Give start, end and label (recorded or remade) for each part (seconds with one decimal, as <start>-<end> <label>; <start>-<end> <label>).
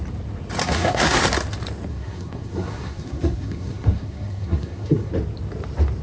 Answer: 0.0-0.6 recorded; 0.6-1.2 remade; 1.2-1.9 recorded; 1.9-5.1 remade; 5.1-6.0 recorded